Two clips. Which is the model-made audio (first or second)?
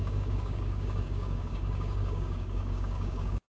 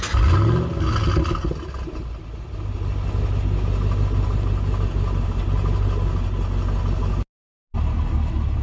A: first